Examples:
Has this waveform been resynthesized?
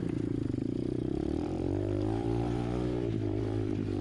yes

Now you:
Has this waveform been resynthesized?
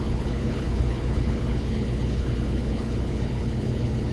yes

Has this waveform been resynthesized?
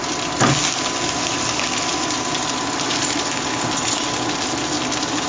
no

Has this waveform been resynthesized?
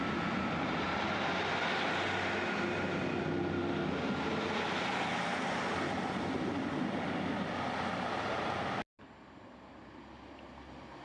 no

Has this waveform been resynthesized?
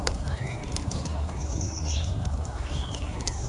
yes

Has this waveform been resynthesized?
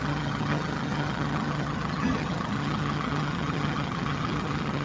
yes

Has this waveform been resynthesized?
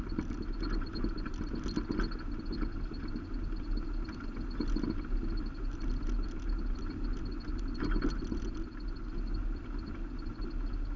no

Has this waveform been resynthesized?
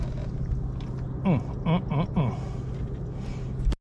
no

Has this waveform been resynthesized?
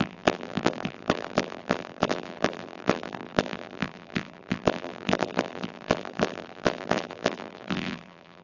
yes